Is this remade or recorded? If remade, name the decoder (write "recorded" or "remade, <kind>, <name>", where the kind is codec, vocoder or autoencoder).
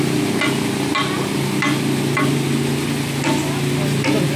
recorded